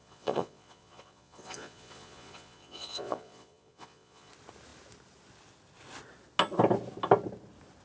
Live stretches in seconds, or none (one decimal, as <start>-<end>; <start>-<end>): 4.3-7.8